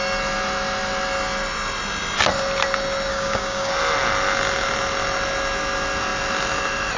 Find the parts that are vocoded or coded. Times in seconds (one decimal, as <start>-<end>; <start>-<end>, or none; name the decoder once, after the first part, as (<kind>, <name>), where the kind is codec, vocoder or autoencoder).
3.1-3.7 (codec, DAC)